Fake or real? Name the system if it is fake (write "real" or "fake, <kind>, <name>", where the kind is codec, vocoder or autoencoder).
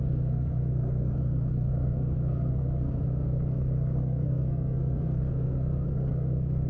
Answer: fake, codec, SNAC